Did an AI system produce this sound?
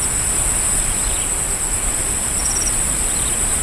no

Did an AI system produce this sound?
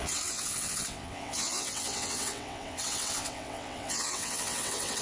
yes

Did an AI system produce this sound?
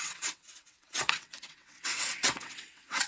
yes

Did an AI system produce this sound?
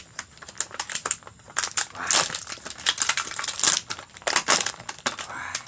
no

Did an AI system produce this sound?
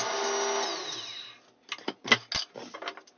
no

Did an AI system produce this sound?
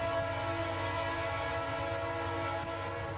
no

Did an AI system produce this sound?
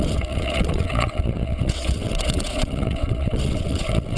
yes